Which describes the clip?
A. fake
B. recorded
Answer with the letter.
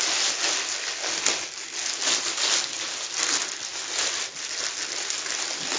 B